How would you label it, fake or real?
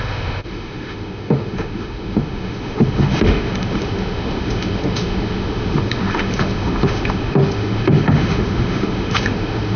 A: fake